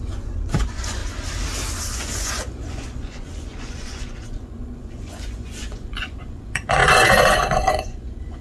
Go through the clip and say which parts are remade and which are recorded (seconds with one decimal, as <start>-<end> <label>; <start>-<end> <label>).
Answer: 0.0-1.0 remade; 1.0-1.9 recorded; 1.9-8.4 remade